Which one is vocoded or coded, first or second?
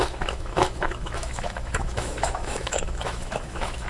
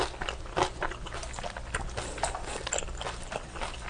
first